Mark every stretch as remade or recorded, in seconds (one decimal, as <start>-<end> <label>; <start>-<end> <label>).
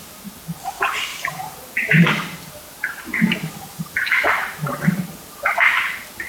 0.0-1.1 recorded; 1.1-2.1 remade; 2.1-3.6 recorded; 3.6-5.0 remade; 5.0-6.3 recorded